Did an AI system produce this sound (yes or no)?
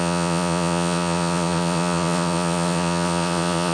yes